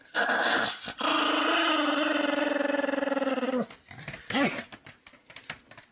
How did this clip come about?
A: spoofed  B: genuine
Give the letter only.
B